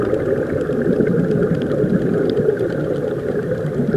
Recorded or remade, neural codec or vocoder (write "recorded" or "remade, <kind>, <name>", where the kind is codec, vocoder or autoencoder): recorded